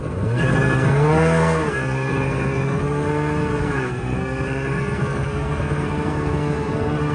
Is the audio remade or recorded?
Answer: remade